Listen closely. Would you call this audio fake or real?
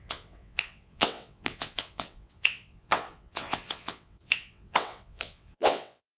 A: fake